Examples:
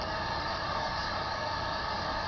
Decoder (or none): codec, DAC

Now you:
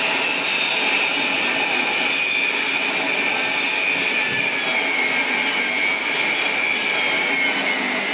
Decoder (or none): none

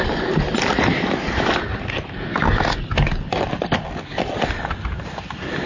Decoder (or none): none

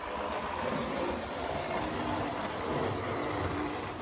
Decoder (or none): none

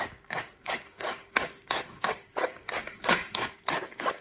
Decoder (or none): codec, DAC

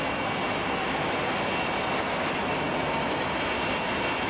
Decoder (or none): none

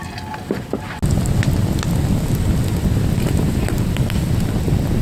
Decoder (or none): none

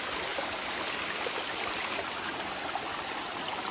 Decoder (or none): none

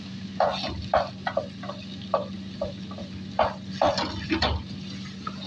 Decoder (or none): none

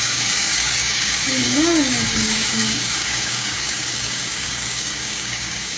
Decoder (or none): codec, DAC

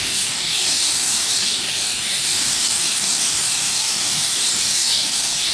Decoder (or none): codec, DAC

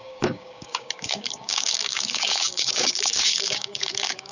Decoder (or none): codec, DAC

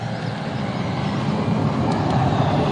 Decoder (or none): none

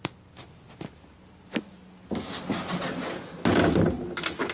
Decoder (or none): none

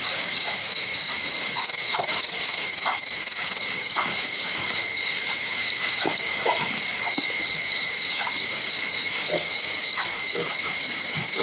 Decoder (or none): codec, DAC